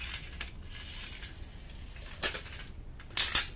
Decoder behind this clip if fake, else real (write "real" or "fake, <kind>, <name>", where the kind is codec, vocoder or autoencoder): real